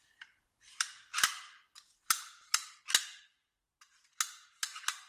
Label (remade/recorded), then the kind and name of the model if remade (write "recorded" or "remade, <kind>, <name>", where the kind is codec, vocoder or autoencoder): recorded